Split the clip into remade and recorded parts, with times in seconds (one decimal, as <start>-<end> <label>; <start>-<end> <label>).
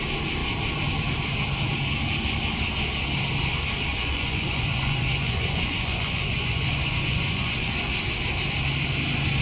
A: 0.0-3.9 recorded; 3.9-7.7 remade; 7.7-9.4 recorded